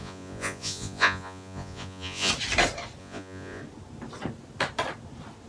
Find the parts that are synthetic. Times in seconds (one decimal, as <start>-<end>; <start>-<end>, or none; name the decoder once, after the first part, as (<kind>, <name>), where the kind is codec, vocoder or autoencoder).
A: 0.0-2.3 (vocoder, Vocos); 3.0-3.6